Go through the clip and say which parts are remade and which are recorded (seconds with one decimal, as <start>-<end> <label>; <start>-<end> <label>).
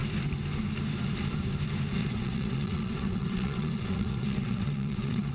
0.0-2.0 recorded; 2.0-5.3 remade